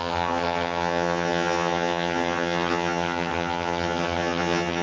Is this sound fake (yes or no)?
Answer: yes